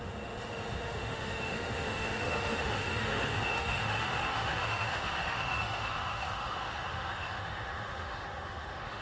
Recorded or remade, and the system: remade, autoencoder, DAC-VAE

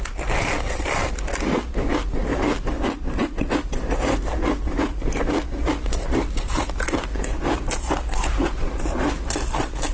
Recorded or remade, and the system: recorded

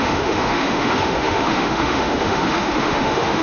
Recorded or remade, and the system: remade, autoencoder, DAC-VAE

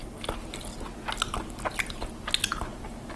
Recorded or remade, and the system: recorded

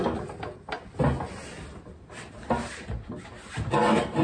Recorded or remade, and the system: recorded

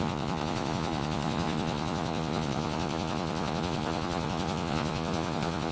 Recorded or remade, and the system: remade, vocoder, Vocos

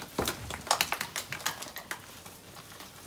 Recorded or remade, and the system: recorded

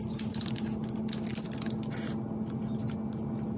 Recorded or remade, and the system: recorded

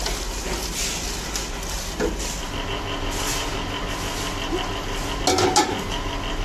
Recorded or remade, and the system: recorded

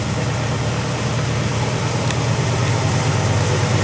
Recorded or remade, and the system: recorded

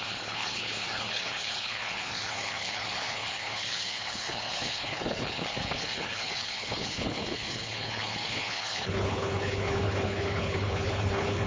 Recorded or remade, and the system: remade, codec, HILCodec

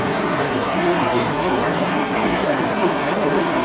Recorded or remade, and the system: remade, codec, SNAC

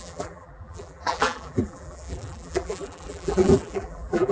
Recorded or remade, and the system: remade, vocoder, BigVGAN v2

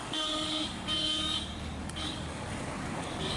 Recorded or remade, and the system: remade, codec, DAC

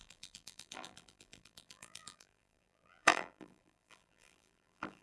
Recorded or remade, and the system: remade, vocoder, BigVGAN v2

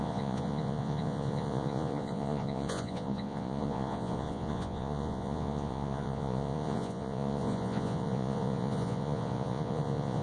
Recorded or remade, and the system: remade, vocoder, Vocos